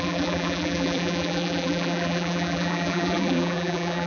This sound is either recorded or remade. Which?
remade